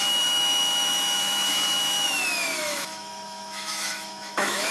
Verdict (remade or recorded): remade